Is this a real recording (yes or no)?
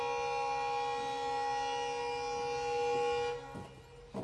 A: yes